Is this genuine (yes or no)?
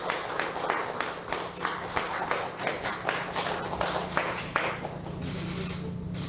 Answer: yes